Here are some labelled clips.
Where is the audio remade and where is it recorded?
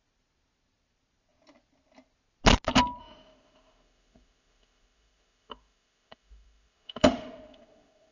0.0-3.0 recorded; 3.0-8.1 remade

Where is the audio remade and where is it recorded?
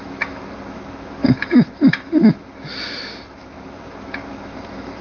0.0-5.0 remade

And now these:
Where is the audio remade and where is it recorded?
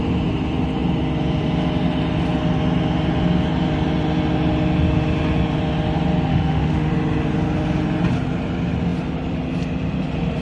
0.0-6.3 recorded; 6.3-6.9 remade; 6.9-10.4 recorded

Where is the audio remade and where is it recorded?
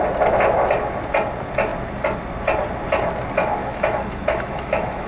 0.0-3.6 recorded; 3.6-5.1 remade